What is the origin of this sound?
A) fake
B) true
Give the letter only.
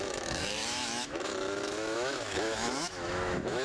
A